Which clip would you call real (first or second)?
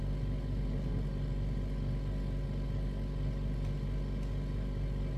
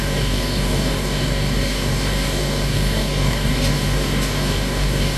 first